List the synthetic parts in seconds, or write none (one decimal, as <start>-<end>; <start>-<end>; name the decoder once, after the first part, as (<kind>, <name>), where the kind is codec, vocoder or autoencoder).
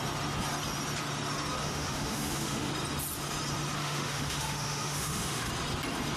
1.6-2.7 (autoencoder, DAC-VAE); 3.8-5.5